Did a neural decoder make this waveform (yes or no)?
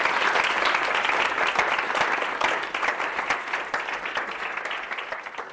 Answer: no